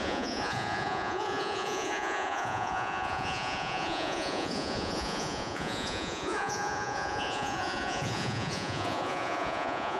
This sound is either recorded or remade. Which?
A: remade